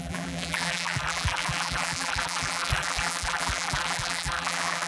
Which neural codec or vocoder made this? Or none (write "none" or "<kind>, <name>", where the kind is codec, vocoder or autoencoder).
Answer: vocoder, BigVGAN v2